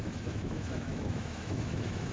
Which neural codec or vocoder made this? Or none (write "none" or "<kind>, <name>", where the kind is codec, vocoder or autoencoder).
autoencoder, DAC-VAE